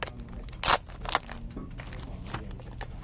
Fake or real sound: real